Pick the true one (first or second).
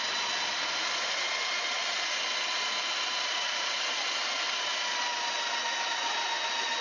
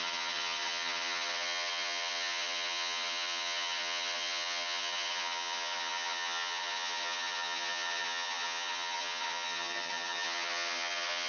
first